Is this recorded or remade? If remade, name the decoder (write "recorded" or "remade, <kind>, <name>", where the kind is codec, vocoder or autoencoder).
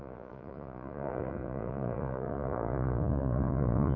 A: remade, vocoder, Vocos